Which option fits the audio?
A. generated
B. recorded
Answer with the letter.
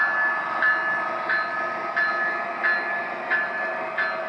B